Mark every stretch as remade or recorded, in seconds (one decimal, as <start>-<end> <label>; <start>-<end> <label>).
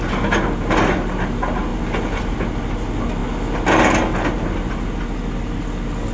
0.0-6.1 recorded